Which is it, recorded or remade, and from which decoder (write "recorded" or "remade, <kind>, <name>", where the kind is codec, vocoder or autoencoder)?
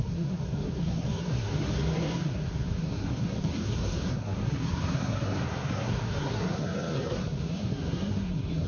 remade, codec, SNAC